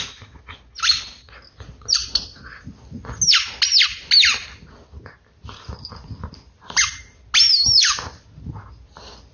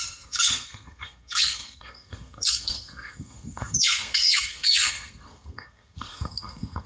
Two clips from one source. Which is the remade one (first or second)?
second